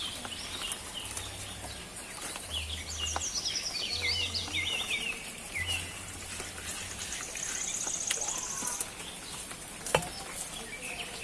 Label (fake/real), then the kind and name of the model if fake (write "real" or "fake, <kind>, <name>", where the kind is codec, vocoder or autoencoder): real